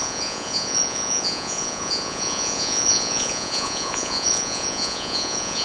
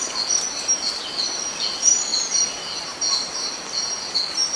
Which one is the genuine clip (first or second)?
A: second